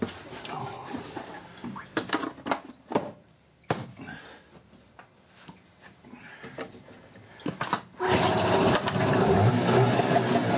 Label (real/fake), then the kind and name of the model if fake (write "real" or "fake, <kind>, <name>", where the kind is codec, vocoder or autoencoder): fake, vocoder, BigVGAN v2